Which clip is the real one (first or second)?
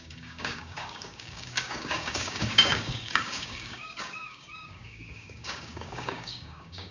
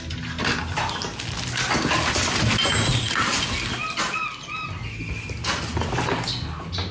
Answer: second